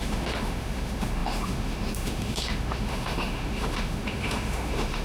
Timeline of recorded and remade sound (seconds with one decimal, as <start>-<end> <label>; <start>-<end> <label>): 0.0-5.0 remade

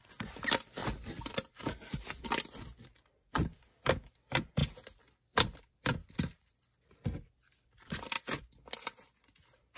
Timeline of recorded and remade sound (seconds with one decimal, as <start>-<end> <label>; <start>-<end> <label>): 0.0-0.8 recorded; 0.8-1.5 remade; 1.5-4.6 recorded; 4.6-6.7 remade; 6.7-9.8 recorded

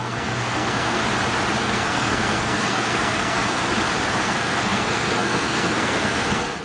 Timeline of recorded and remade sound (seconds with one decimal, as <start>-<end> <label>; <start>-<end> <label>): 0.0-1.0 remade; 1.0-1.6 recorded; 1.6-3.6 remade; 3.6-4.2 recorded; 4.2-6.6 remade

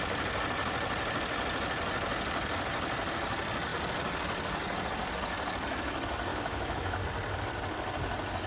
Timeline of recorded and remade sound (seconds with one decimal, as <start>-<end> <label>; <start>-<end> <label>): 0.0-6.3 recorded; 6.3-7.0 remade; 7.0-8.5 recorded

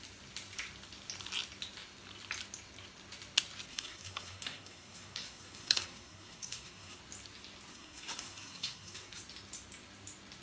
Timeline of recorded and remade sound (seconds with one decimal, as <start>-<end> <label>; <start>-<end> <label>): 0.0-3.7 recorded; 3.7-7.0 remade; 7.0-7.7 recorded; 7.7-9.2 remade; 9.2-10.4 recorded

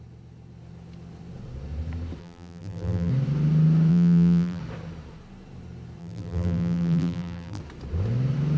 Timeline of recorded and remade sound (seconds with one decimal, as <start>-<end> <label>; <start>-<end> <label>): 0.0-2.2 recorded; 2.2-3.1 remade; 3.1-3.9 recorded; 3.9-4.6 remade; 4.6-6.0 recorded; 6.0-7.6 remade; 7.6-8.6 recorded

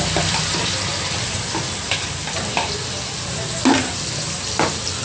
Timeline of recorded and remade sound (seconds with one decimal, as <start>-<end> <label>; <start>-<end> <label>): 0.0-5.0 recorded

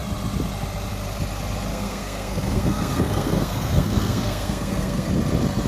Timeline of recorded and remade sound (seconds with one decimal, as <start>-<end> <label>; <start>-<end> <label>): 0.0-1.7 recorded; 1.7-5.1 remade; 5.1-5.7 recorded